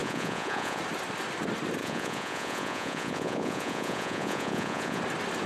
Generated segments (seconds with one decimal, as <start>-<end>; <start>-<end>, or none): 0.0-0.8; 1.8-5.0